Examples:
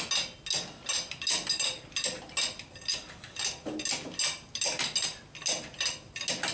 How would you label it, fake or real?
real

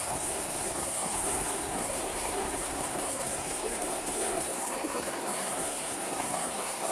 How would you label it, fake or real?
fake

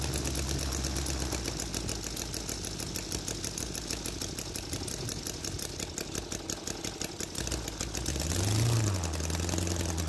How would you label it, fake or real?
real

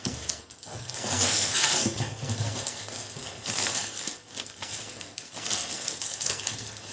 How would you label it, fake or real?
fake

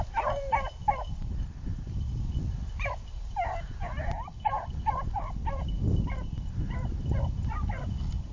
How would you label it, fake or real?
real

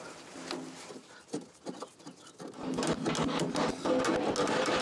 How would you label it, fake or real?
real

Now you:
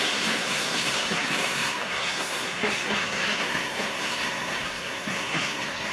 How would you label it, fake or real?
fake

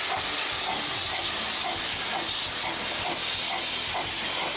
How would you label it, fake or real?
real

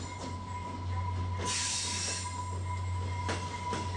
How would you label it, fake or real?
real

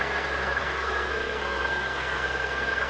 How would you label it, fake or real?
fake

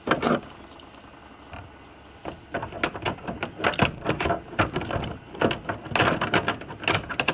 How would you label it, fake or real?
real